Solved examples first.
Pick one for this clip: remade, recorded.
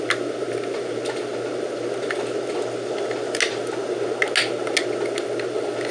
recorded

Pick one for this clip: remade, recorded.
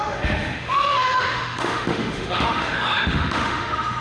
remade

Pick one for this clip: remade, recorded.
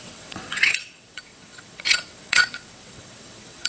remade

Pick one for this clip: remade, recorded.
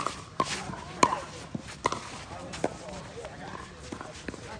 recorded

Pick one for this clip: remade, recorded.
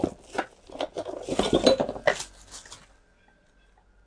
recorded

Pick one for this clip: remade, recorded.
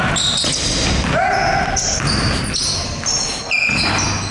recorded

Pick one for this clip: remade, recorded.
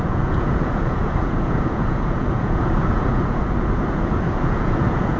remade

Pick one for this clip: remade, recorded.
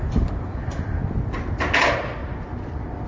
recorded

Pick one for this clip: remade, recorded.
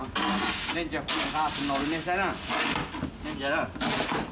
recorded